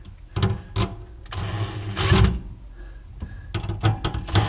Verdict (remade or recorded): recorded